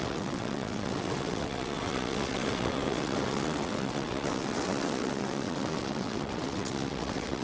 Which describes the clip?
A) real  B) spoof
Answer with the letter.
B